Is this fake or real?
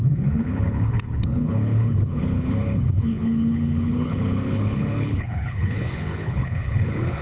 fake